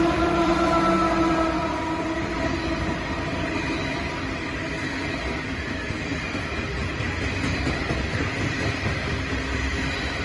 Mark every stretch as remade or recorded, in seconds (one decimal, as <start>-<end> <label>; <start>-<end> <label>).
0.0-0.5 remade; 0.5-3.2 recorded; 3.2-10.2 remade